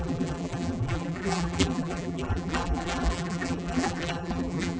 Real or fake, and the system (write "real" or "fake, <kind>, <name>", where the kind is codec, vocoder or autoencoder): fake, vocoder, BigVGAN v2